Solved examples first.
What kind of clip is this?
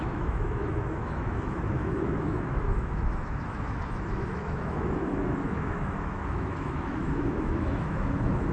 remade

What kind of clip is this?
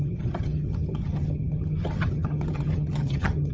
remade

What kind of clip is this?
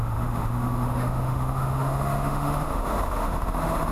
remade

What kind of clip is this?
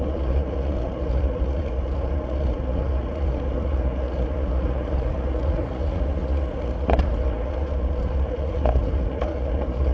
remade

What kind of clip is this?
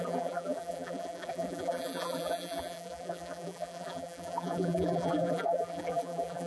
remade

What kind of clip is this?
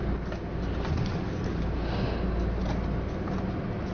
recorded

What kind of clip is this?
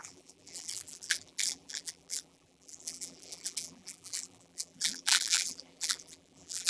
remade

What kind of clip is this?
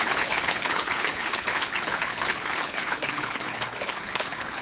remade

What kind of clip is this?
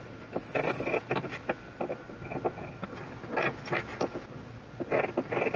recorded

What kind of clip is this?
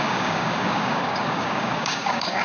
remade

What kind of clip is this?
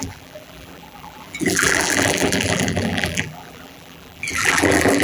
remade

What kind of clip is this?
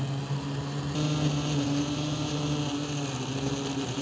recorded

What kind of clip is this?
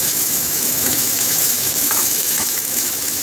remade